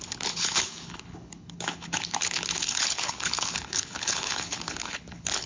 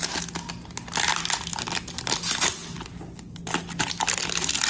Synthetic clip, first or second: first